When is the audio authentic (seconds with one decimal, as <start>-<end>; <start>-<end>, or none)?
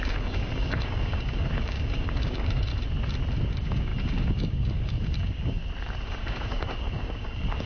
2.7-3.5; 5.6-6.1